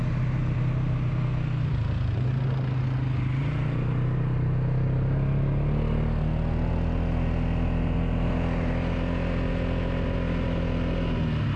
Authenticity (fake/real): real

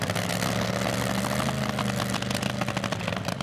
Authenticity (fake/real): real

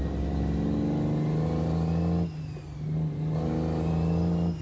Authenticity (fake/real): real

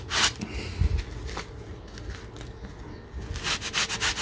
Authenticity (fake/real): real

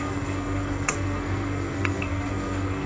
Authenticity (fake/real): fake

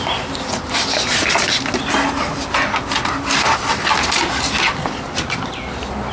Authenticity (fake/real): real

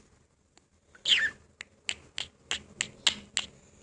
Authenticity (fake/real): real